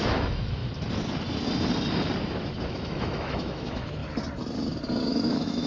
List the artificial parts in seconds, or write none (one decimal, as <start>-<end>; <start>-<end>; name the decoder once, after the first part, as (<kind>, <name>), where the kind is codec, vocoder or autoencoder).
0.0-0.6 (autoencoder, DAC-VAE); 2.7-4.0; 5.1-5.7

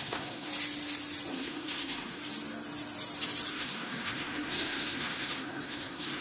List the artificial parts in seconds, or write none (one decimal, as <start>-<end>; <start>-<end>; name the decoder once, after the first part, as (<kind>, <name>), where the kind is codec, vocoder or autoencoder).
0.0-0.5 (codec, SNAC); 1.3-2.2; 3.5-6.2

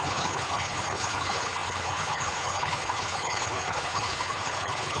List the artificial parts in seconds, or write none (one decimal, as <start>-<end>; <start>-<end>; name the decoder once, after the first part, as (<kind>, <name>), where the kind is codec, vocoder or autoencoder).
0.0-5.0 (codec, HILCodec)

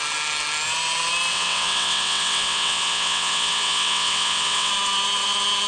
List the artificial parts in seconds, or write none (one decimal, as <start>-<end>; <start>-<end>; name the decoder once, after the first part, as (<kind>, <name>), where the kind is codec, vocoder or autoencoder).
1.3-4.7 (vocoder, WaveNeXt)

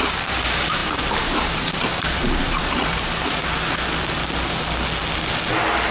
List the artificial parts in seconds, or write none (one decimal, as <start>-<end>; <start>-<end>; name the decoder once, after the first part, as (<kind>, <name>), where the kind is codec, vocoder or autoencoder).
0.0-3.4 (vocoder, BigVGAN v2)